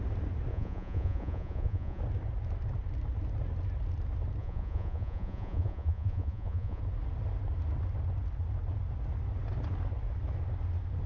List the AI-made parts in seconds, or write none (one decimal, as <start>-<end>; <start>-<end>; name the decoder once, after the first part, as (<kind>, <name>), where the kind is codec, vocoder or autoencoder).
0.5-2.0 (vocoder, Vocos); 4.4-6.8